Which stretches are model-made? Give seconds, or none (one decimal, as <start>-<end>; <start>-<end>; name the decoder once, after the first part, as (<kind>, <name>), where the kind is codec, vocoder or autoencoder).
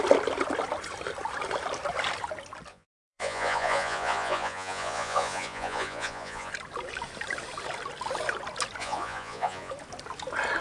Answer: 2.7-6.5 (vocoder, Vocos); 8.8-9.7